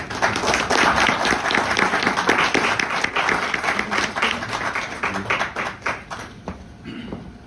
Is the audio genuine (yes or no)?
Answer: yes